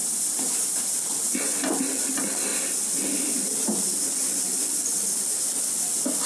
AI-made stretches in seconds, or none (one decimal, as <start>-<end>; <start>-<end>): 0.0-0.8